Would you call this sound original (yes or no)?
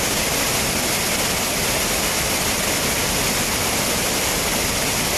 yes